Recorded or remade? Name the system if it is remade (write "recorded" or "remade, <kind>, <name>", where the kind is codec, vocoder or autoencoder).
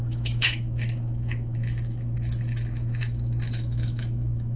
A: remade, autoencoder, DAC-VAE